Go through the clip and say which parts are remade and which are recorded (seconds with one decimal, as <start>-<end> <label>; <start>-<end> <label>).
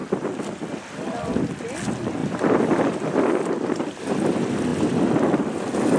0.0-6.0 recorded